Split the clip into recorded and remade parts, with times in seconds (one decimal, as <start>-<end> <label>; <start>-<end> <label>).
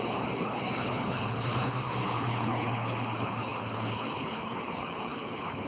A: 0.0-5.7 remade